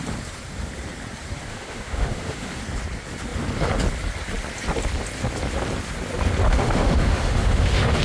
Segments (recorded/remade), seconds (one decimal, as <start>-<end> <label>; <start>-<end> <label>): 0.0-1.5 recorded; 1.5-2.6 remade; 2.6-6.5 recorded; 6.5-8.0 remade